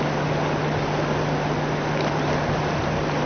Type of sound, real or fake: real